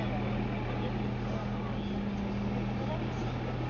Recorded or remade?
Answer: recorded